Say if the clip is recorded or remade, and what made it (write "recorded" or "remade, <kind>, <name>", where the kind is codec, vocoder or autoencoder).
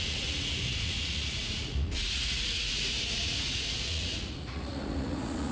remade, vocoder, Vocos